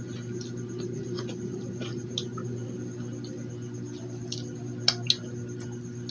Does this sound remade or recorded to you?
recorded